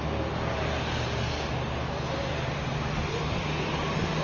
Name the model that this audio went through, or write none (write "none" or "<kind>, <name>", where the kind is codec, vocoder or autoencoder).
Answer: none